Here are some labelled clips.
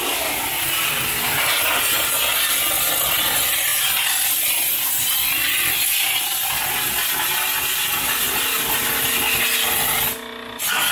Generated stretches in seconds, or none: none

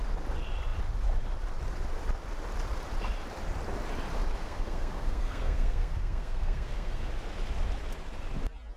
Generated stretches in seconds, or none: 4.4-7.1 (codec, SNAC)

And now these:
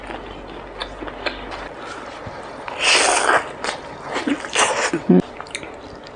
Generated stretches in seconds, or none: none

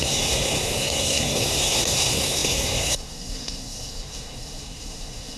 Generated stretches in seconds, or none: 0.0-5.4 (codec, SNAC)